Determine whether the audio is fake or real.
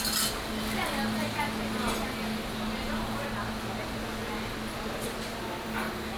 real